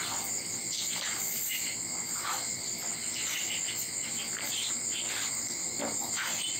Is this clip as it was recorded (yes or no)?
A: yes